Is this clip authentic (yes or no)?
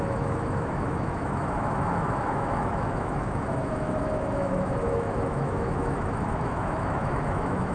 no